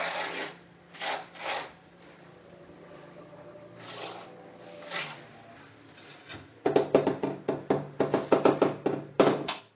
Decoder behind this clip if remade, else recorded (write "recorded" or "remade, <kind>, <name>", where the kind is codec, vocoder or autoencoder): recorded